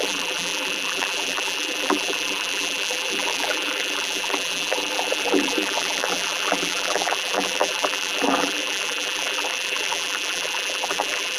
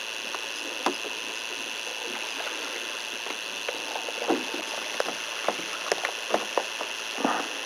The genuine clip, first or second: second